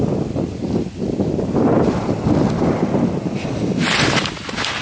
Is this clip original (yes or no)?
yes